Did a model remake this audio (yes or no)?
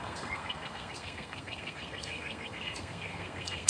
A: yes